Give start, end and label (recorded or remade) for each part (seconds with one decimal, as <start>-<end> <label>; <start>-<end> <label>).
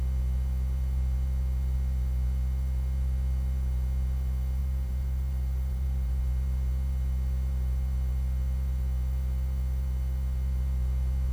0.0-4.6 recorded; 4.6-6.2 remade; 6.2-11.3 recorded